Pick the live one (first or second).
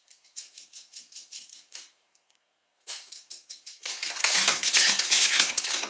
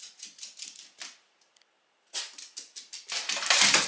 second